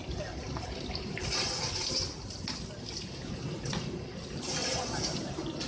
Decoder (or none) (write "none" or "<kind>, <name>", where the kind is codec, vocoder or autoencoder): none